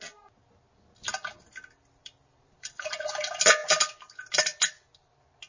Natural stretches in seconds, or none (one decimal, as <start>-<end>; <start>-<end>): 0.0-2.0; 2.9-5.5